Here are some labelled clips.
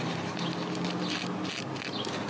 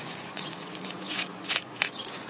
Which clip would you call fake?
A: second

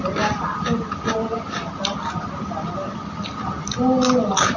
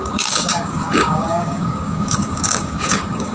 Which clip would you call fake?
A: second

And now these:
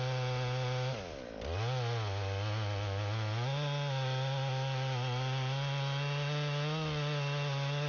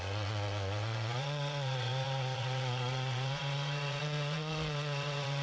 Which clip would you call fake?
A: second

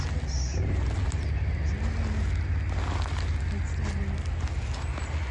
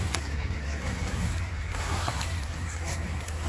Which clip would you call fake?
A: second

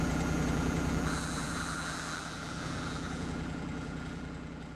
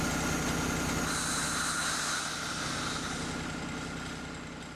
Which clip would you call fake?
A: first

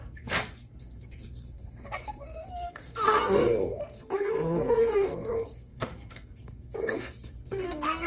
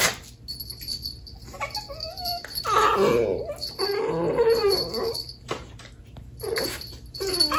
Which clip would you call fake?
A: first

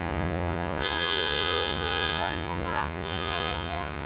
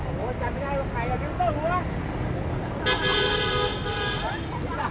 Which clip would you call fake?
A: first